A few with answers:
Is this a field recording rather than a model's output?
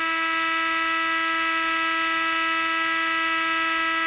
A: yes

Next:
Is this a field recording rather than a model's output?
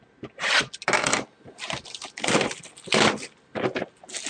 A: yes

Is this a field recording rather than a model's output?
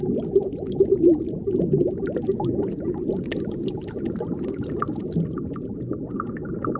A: yes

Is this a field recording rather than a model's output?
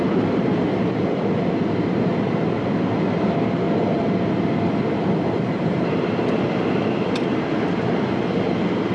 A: yes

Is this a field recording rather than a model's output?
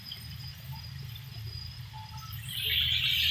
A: yes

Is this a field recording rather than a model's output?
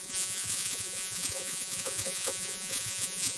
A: no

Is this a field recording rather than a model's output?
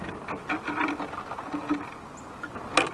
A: yes